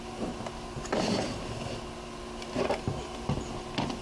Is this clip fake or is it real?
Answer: real